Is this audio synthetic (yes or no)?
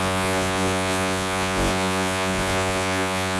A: yes